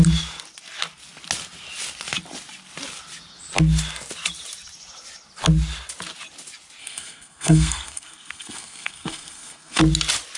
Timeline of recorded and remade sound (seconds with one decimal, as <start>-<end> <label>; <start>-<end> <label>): 0.0-6.8 recorded; 6.8-9.8 remade; 9.8-10.4 recorded